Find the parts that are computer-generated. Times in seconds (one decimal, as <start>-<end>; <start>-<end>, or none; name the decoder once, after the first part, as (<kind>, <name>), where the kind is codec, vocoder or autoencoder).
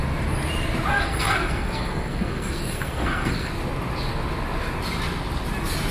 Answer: 0.9-3.5 (codec, SNAC)